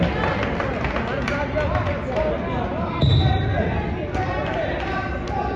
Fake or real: real